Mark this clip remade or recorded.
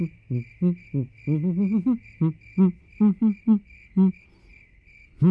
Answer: recorded